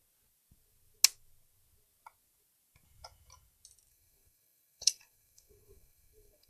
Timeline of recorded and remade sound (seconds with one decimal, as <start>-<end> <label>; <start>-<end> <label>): 0.0-3.9 recorded; 3.9-6.5 remade